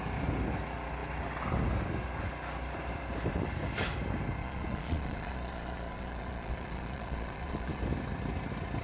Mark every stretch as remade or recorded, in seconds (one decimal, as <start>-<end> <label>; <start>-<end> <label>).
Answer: 0.0-4.4 recorded; 4.4-7.8 remade; 7.8-8.8 recorded